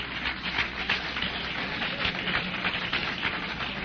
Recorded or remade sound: recorded